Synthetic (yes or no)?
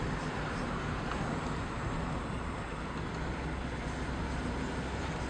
no